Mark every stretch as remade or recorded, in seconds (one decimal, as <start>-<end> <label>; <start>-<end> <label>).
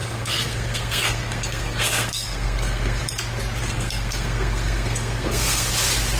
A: 0.0-3.0 remade; 3.0-3.6 recorded; 3.6-5.7 remade; 5.7-6.2 recorded